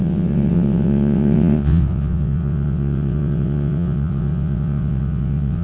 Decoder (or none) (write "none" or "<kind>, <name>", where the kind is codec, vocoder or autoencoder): vocoder, WaveNeXt